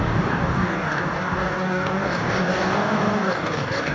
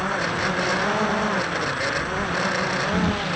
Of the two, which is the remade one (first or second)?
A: first